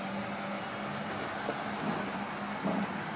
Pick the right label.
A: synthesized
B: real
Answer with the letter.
B